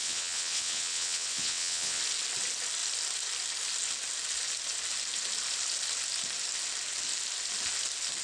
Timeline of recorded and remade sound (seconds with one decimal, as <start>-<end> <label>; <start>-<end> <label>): 0.0-2.0 remade; 2.0-8.2 recorded